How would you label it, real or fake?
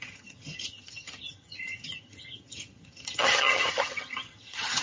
fake